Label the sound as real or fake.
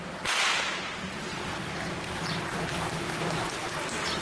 real